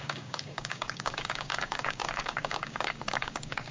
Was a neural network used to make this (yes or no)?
yes